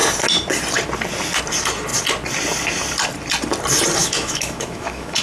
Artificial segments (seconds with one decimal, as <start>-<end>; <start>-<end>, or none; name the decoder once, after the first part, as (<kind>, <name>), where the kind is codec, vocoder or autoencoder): 4.0-5.2 (autoencoder, DAC-VAE)